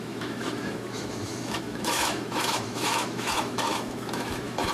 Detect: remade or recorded remade